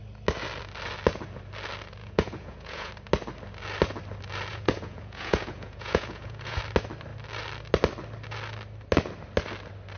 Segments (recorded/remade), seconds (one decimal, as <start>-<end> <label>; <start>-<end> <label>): 0.0-2.0 recorded; 2.0-2.9 remade; 2.9-4.5 recorded; 4.5-6.6 remade; 6.6-10.0 recorded